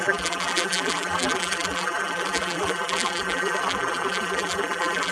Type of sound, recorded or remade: remade